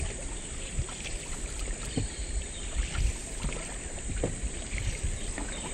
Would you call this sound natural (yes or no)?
yes